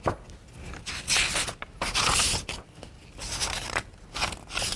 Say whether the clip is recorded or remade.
recorded